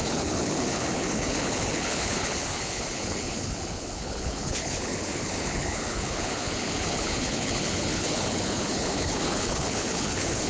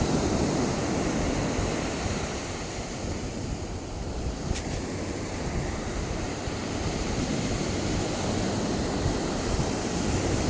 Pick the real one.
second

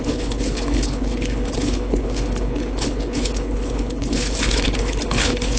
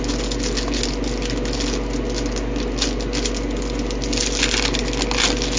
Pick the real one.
second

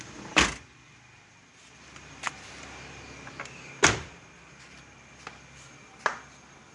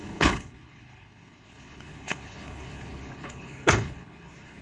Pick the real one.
first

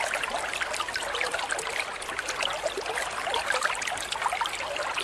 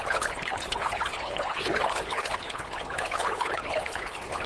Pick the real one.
first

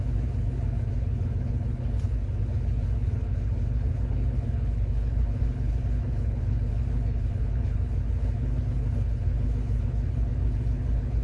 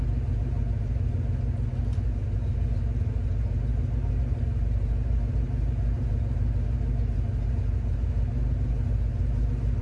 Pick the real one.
second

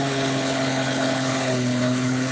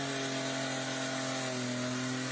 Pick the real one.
second